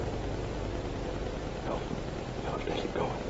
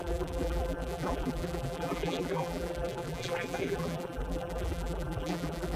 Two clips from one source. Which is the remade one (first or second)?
second